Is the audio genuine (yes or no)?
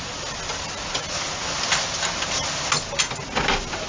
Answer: yes